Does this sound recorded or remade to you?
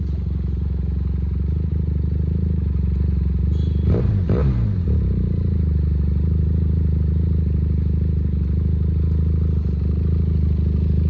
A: remade